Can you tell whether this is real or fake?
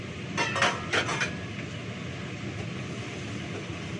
real